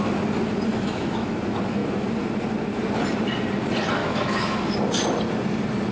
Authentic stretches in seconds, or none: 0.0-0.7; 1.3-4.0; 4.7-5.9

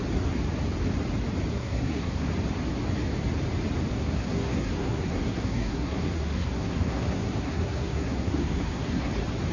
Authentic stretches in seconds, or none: 0.0-1.5; 2.3-3.9; 9.1-9.5

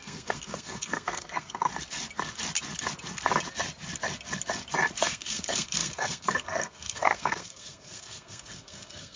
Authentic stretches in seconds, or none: 1.7-5.0

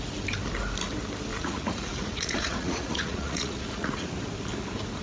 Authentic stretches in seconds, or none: 0.0-1.3; 4.1-5.0